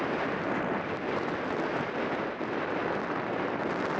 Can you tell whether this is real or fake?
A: real